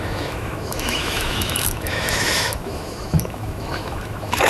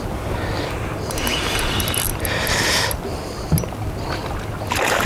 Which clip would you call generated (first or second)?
first